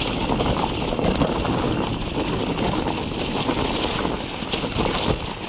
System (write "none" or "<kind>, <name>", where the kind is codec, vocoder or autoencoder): none